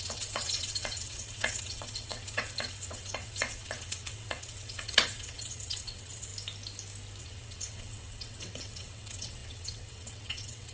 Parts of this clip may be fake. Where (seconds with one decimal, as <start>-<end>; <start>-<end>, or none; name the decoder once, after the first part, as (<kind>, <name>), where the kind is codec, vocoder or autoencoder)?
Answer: 0.0-6.3 (vocoder, WaveNeXt); 7.2-10.7